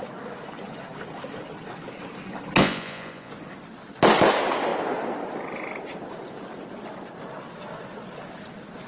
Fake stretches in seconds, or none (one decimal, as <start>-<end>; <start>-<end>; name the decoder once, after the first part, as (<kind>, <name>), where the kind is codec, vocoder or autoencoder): 2.6-3.3 (vocoder, Vocos)